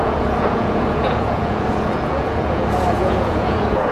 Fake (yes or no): yes